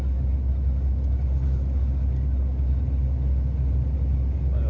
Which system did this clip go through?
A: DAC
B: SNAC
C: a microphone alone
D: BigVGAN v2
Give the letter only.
C